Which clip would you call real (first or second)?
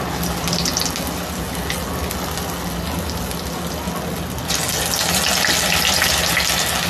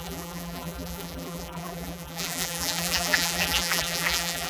first